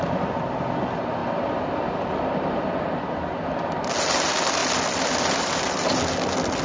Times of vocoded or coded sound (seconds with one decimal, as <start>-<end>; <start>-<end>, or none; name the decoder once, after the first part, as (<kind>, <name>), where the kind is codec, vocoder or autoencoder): none